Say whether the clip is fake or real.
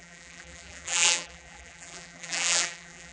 fake